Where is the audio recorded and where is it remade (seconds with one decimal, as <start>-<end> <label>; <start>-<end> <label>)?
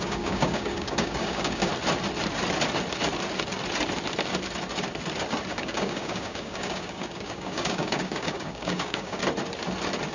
0.0-1.7 remade; 1.7-5.5 recorded; 5.5-9.2 remade; 9.2-10.1 recorded